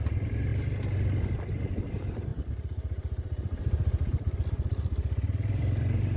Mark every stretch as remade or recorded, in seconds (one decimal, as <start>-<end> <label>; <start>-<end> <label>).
0.0-2.3 recorded; 2.3-6.2 remade